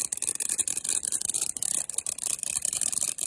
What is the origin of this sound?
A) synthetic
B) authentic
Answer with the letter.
A